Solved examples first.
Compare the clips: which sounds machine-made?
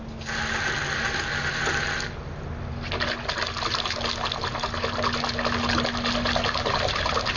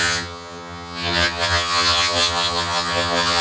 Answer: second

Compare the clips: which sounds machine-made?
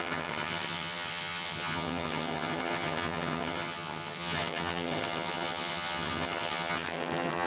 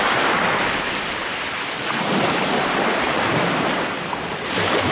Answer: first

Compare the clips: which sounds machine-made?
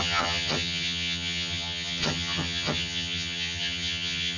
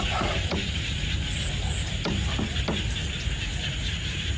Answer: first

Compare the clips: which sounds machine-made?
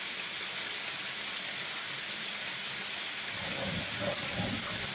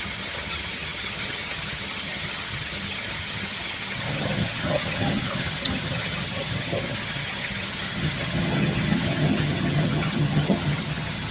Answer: second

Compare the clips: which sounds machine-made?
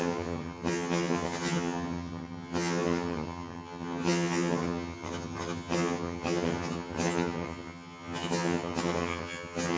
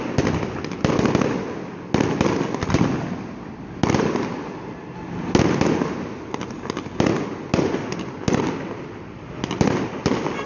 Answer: first